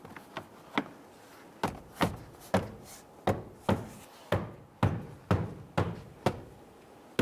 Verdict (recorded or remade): recorded